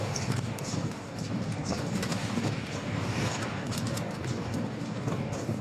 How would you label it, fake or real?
fake